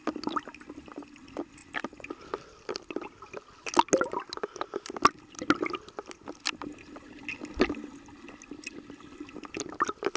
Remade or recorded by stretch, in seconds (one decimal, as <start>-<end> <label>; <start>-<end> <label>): 0.0-10.2 recorded